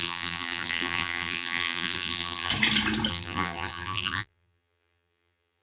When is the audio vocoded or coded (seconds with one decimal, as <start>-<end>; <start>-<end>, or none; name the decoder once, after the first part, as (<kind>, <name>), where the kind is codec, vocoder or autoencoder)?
0.0-2.5 (vocoder, BigVGAN v2); 3.1-5.6